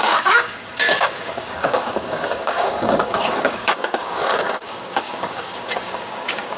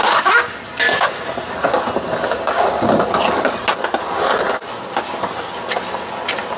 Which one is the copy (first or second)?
first